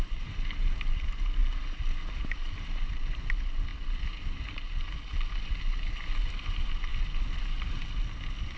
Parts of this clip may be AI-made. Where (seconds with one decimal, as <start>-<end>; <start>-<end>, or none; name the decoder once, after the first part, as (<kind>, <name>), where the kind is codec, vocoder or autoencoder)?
0.0-1.4 (vocoder, BigVGAN v2); 2.1-6.9; 7.5-8.6